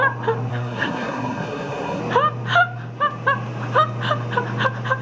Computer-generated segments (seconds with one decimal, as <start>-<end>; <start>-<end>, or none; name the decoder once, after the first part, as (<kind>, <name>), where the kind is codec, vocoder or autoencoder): 0.5-2.0 (codec, SNAC)